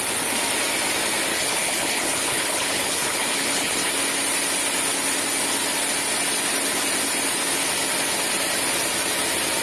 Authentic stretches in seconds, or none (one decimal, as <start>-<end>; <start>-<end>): 0.0-1.3; 3.9-9.6